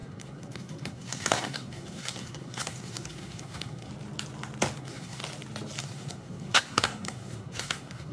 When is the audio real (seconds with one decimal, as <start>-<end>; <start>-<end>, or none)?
3.9-4.8; 5.2-5.8